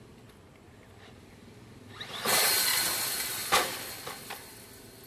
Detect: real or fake real